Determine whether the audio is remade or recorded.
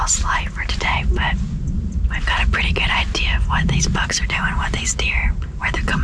recorded